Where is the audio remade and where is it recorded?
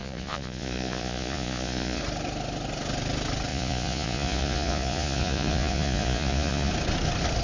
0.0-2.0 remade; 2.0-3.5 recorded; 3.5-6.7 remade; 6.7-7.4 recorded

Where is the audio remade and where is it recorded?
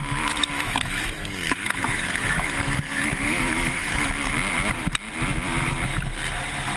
0.0-4.1 remade; 4.1-6.8 recorded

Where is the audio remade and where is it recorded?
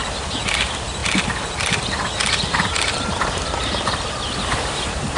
0.0-5.2 remade